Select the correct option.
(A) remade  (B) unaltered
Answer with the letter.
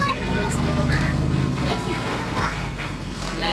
A